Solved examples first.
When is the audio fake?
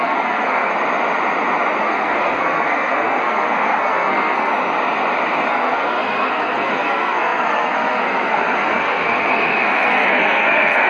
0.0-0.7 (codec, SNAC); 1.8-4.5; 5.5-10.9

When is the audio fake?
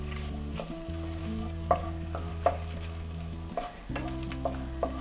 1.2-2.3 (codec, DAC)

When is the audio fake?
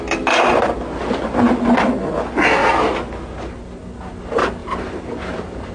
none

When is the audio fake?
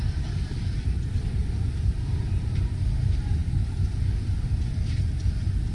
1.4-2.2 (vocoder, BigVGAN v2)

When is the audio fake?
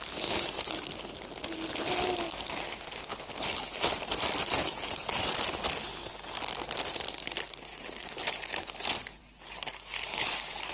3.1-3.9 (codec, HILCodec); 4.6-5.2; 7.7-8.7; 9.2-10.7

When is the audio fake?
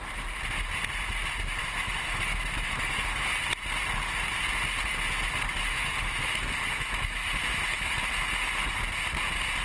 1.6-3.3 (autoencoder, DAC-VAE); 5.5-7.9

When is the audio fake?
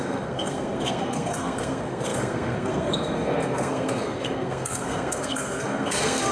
0.0-6.3 (codec, SNAC)